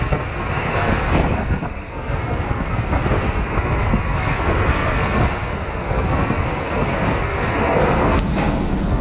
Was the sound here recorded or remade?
remade